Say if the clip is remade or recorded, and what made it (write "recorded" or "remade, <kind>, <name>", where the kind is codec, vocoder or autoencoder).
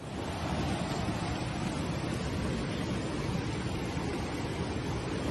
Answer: recorded